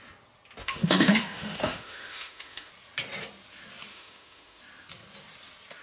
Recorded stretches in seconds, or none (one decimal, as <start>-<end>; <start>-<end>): 0.0-0.6; 2.7-3.9; 4.6-5.8